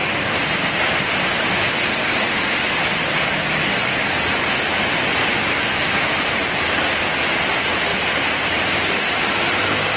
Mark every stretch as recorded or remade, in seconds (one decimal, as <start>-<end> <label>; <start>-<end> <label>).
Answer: 0.0-7.9 recorded; 7.9-8.5 remade; 8.5-10.0 recorded

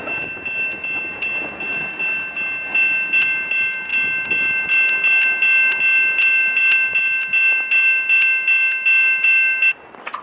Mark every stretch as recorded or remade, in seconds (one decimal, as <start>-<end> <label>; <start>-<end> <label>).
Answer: 0.0-10.2 recorded

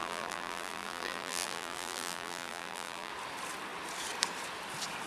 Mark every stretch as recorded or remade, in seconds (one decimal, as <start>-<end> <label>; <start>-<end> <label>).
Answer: 0.0-3.1 remade; 3.1-5.1 recorded

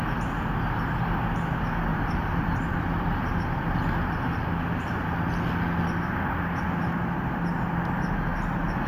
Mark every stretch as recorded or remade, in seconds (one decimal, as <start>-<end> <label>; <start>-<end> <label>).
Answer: 0.0-1.9 recorded; 1.9-4.0 remade; 4.0-8.9 recorded